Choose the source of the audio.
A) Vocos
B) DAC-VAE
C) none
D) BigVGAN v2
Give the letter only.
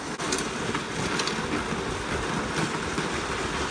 C